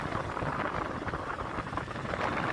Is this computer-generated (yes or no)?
no